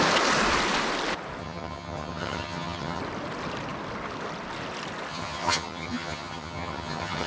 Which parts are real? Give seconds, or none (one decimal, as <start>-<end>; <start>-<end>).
0.0-1.4; 3.0-5.1